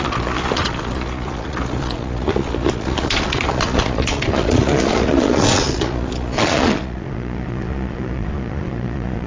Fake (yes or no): yes